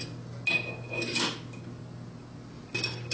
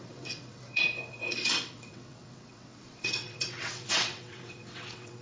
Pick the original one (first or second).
first